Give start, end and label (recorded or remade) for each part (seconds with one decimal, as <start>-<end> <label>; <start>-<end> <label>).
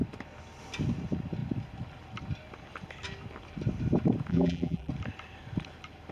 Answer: 0.0-4.3 recorded; 4.3-4.9 remade; 4.9-6.1 recorded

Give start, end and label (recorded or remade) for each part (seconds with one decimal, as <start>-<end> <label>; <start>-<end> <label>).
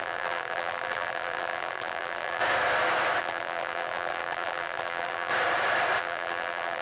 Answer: 0.0-2.4 remade; 2.4-3.2 recorded; 3.2-5.3 remade; 5.3-6.0 recorded; 6.0-6.8 remade